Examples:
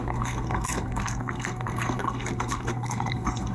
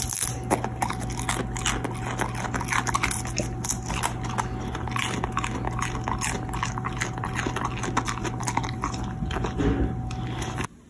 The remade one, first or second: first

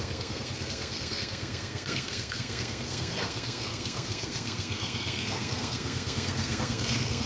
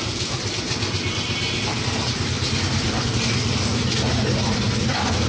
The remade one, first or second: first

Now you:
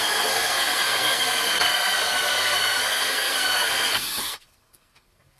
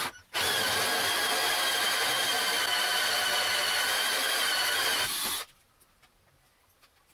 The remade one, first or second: first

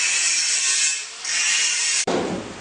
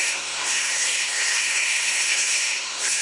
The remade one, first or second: second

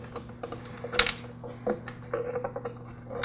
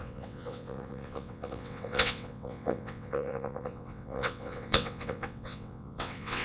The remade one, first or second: second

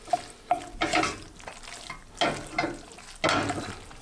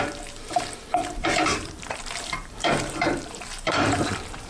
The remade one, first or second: second